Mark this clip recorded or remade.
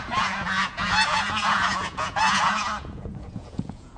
remade